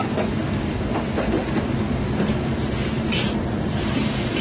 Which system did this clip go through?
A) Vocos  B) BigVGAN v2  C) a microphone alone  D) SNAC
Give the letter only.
C